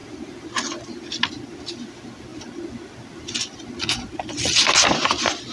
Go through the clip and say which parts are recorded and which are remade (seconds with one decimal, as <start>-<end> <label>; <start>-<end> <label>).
0.0-5.5 recorded